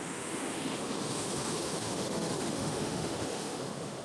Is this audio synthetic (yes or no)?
yes